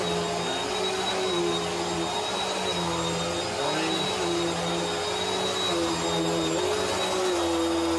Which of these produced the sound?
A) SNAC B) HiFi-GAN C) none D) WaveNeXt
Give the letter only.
C